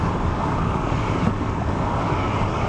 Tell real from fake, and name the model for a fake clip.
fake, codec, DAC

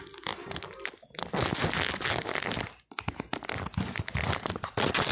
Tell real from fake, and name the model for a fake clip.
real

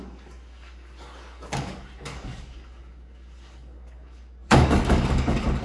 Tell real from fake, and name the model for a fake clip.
fake, codec, DAC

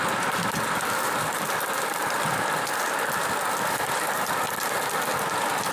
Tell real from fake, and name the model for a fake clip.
real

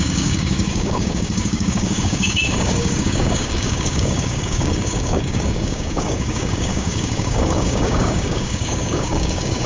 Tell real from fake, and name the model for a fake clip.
fake, codec, DAC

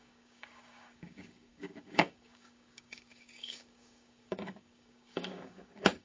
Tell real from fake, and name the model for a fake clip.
fake, codec, DAC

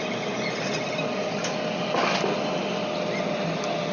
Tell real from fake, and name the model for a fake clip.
real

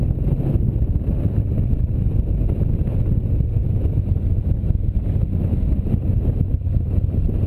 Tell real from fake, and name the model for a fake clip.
real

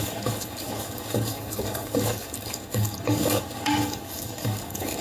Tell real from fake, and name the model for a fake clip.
fake, codec, DAC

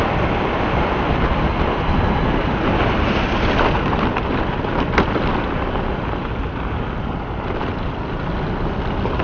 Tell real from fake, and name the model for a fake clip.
real